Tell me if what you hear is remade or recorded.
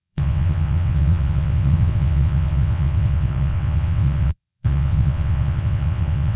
remade